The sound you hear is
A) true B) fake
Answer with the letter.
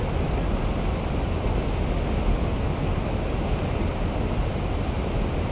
A